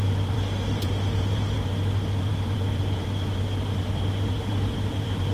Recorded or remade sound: remade